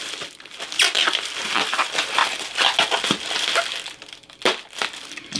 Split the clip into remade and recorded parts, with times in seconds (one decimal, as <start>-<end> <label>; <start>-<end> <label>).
0.0-2.2 remade; 2.2-5.4 recorded